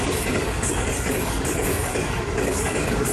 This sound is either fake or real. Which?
fake